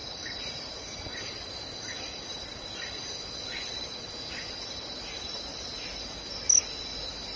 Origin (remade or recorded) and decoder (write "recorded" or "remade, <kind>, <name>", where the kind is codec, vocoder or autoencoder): recorded